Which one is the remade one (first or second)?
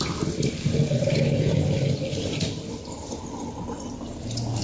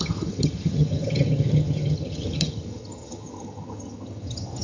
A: second